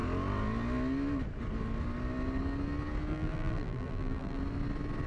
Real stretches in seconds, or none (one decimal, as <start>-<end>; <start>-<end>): 0.0-3.1; 4.4-5.1